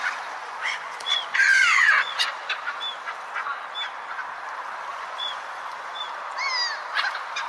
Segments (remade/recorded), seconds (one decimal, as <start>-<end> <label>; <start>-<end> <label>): 0.0-0.4 recorded; 0.4-2.3 remade; 2.3-4.9 recorded; 4.9-6.0 remade; 6.0-7.5 recorded